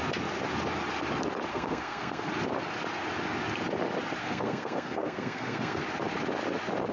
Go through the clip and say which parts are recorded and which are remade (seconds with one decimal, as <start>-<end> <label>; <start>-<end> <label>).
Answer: 0.0-1.5 recorded; 1.5-2.3 remade; 2.3-4.2 recorded; 4.2-5.8 remade; 5.8-6.9 recorded